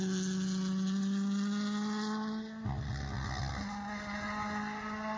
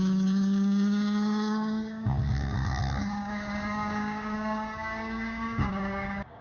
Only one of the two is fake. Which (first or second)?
second